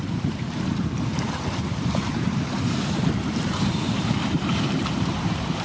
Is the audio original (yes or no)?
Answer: no